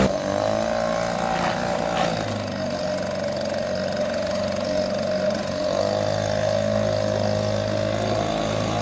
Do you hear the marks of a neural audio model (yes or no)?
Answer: no